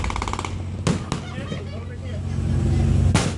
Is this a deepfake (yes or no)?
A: no